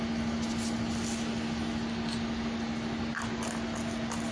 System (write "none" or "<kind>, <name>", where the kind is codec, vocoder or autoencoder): none